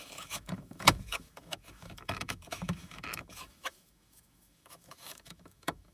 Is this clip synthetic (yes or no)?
yes